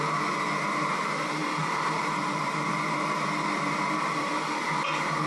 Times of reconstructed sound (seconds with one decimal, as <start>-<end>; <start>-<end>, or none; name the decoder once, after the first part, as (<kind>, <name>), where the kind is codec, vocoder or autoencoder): 1.4-4.6 (vocoder, BigVGAN v2)